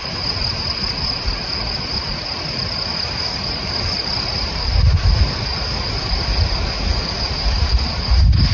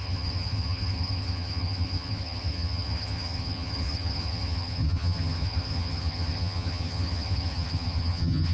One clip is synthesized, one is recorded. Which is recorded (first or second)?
first